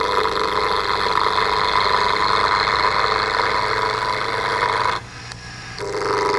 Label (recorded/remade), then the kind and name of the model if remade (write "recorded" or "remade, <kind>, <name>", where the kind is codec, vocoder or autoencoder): recorded